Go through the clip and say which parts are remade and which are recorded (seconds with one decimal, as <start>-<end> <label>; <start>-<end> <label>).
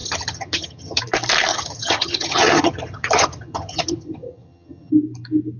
0.0-1.0 remade; 1.0-1.5 recorded; 1.5-4.9 remade; 4.9-5.6 recorded